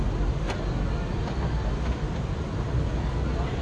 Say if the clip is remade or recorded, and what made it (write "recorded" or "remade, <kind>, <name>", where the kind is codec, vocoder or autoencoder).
recorded